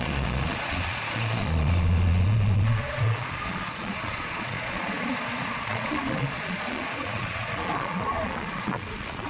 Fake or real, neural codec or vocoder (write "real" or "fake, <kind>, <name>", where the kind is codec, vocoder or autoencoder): fake, vocoder, Vocos